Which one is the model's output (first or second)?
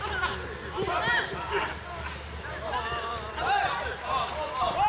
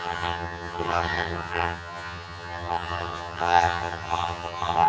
second